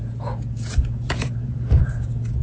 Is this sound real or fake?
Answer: fake